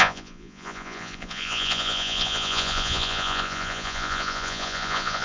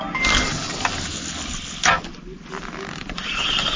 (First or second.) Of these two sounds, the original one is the second